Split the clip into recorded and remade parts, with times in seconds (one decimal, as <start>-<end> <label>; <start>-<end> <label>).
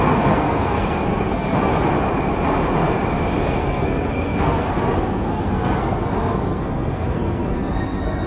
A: 0.0-1.7 remade; 1.7-3.4 recorded; 3.4-8.3 remade